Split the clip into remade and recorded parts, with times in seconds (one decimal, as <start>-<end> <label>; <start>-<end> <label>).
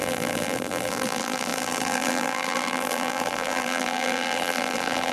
0.0-5.1 remade